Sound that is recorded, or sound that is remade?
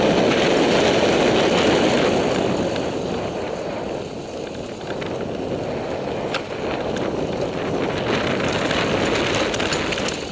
recorded